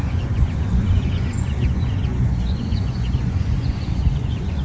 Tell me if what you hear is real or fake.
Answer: fake